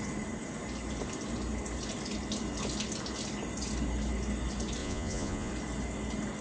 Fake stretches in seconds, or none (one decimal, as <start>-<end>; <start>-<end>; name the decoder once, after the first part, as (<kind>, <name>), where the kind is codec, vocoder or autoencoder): 4.8-5.5 (vocoder, Vocos)